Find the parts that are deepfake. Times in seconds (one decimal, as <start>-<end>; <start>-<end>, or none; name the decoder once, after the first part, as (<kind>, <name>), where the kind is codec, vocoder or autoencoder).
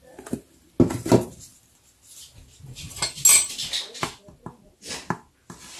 none